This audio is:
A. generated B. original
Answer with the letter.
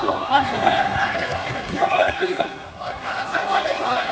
A